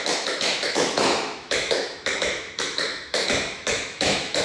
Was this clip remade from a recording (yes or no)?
yes